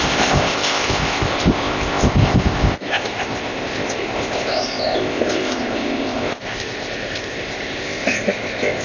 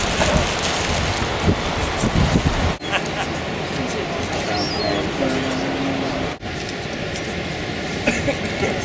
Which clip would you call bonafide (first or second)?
second